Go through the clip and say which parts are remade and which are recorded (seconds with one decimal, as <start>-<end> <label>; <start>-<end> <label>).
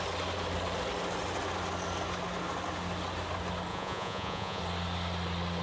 0.0-3.7 recorded; 3.7-4.6 remade; 4.6-5.6 recorded